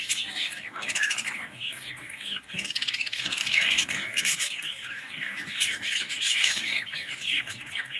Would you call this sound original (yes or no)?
no